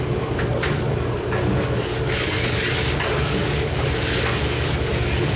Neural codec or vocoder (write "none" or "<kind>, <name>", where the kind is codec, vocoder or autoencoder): codec, DAC